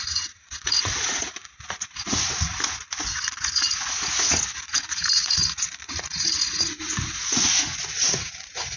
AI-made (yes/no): yes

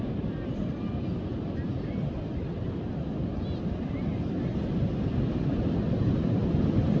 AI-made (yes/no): no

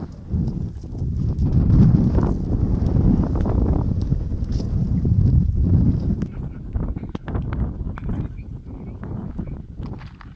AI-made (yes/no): no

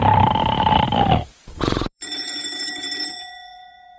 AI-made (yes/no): yes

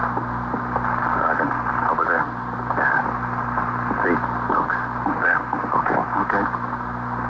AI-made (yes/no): no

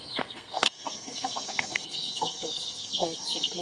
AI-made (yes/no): yes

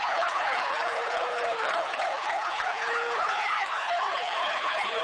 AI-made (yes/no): yes